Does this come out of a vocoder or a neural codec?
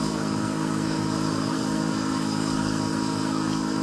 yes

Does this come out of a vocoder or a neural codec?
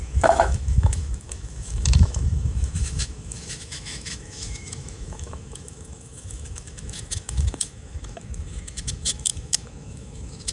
yes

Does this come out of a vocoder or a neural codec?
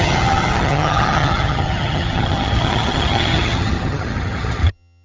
yes